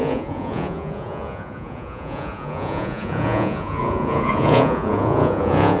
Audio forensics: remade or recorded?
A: remade